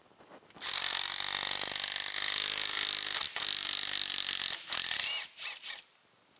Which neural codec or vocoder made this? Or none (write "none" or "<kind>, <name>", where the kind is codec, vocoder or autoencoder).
none